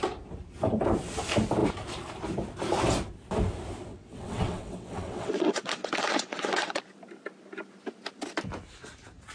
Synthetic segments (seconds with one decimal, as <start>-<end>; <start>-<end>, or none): 3.9-6.8